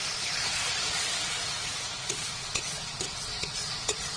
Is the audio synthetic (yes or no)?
yes